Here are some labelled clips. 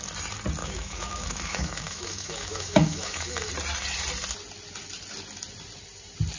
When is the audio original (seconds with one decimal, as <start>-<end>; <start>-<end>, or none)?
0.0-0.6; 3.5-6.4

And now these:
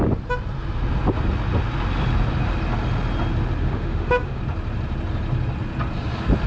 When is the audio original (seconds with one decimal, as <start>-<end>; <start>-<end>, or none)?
0.0-3.6; 4.4-6.5

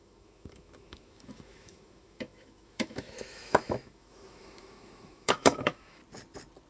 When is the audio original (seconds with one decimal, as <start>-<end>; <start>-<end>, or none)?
6.0-6.7

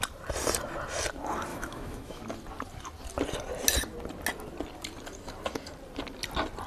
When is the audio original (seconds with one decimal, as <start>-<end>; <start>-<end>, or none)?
0.0-1.5; 2.2-6.7